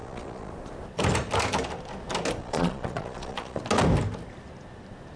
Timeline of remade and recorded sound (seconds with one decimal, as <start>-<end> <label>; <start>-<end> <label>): 0.0-0.5 remade; 0.5-2.4 recorded; 2.4-3.6 remade; 3.6-5.2 recorded